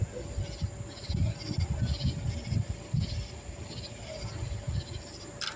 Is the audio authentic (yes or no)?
yes